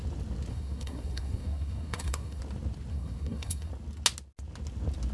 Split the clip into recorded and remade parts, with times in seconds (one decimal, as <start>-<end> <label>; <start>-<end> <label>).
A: 0.0-0.5 recorded; 0.5-2.4 remade; 2.4-2.9 recorded; 2.9-3.7 remade; 3.7-5.1 recorded